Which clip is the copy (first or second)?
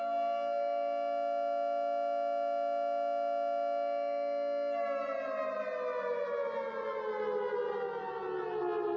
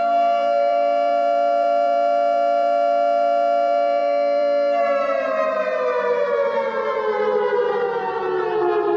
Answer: second